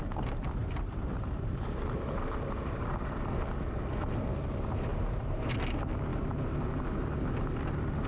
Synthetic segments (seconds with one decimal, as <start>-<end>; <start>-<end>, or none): 0.6-3.1; 4.9-5.5